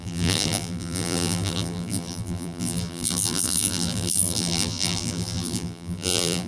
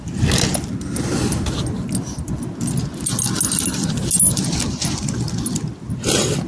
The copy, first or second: first